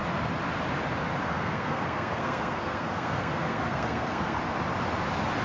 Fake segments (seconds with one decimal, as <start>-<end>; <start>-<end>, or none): 1.2-4.4

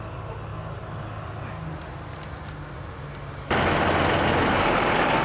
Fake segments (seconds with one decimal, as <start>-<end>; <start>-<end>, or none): none